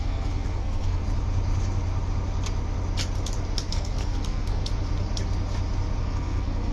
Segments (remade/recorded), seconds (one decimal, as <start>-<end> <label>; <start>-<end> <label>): 0.0-1.0 remade; 1.0-3.7 recorded; 3.7-4.6 remade; 4.6-6.0 recorded; 6.0-6.7 remade